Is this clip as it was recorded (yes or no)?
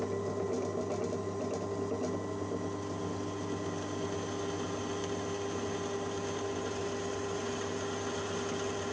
yes